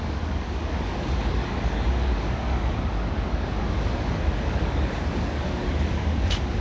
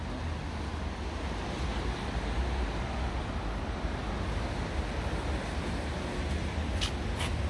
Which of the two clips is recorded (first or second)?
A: second